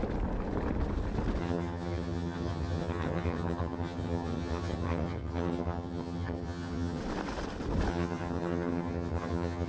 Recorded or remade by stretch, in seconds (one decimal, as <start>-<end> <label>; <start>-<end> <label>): 0.0-1.4 recorded; 1.4-7.0 remade; 7.0-7.9 recorded; 7.9-9.7 remade